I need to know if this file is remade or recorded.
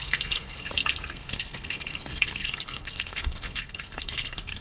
remade